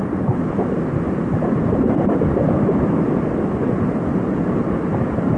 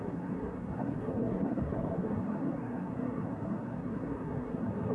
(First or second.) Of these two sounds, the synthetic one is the second